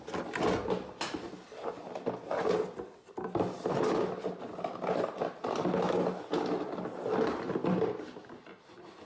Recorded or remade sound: recorded